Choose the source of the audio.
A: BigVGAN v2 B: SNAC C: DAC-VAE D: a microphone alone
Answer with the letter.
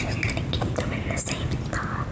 D